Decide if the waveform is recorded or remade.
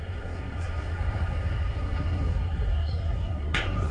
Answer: remade